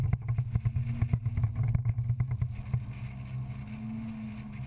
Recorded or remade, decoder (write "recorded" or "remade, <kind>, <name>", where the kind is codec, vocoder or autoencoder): recorded